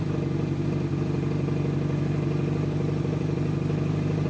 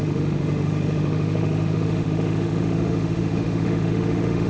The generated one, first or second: second